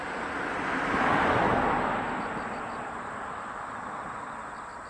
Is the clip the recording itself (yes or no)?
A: yes